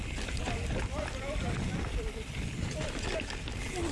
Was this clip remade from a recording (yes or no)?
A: no